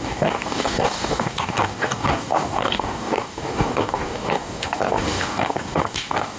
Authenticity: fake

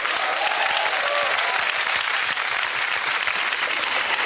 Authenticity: real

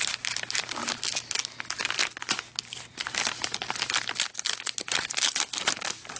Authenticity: real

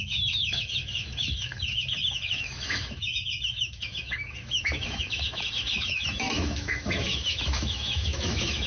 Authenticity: fake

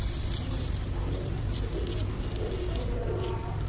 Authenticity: real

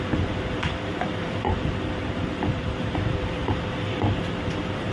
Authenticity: fake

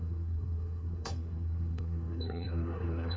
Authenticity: fake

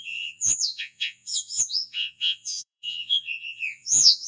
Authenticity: fake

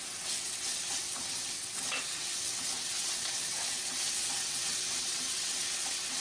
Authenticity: fake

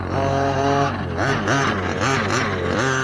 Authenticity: real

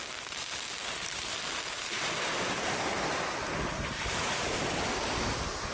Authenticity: real